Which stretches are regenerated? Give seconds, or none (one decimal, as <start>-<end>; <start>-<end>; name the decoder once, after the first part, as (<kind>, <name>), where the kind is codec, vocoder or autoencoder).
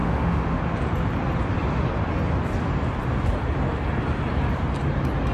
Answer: 0.0-0.6 (autoencoder, DAC-VAE)